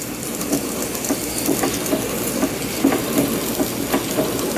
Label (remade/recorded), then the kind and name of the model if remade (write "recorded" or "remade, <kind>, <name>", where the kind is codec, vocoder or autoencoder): recorded